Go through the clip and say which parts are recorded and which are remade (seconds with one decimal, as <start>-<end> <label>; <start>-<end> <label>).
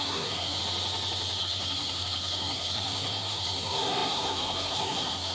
0.0-0.6 remade; 0.6-1.4 recorded; 1.4-5.3 remade